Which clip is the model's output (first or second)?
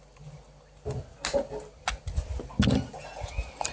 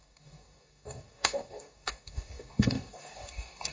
second